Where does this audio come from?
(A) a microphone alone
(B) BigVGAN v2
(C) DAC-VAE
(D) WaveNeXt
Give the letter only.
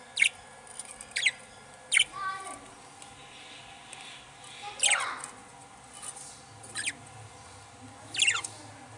A